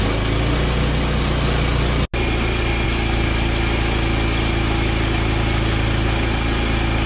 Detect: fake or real real